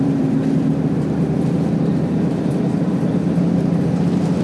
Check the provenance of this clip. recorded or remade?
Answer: remade